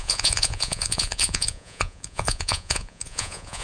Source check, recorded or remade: remade